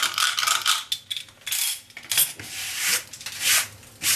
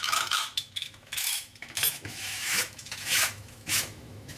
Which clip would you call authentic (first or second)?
first